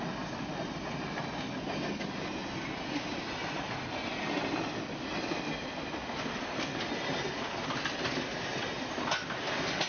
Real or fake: real